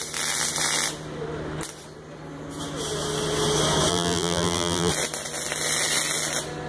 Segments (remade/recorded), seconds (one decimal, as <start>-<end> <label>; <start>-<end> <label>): 0.0-3.9 recorded; 3.9-4.9 remade; 4.9-6.7 recorded